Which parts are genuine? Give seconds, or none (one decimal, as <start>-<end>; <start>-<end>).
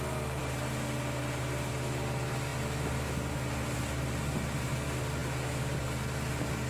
0.0-6.7